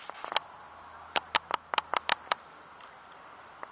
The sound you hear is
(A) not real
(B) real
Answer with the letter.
B